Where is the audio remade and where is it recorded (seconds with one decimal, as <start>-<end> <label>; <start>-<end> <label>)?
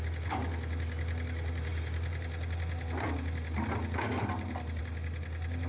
0.0-5.7 recorded